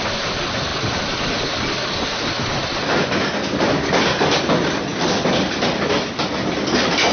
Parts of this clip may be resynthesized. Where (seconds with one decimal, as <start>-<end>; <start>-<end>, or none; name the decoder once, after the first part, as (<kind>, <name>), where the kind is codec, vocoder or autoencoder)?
0.7-3.9 (vocoder, BigVGAN v2); 4.9-6.2